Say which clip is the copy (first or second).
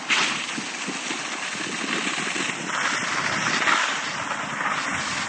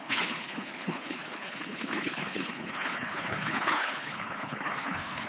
second